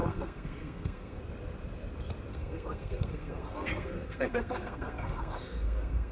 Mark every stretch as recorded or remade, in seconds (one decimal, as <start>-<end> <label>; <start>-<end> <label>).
0.0-1.2 remade; 1.2-2.3 recorded; 2.3-6.1 remade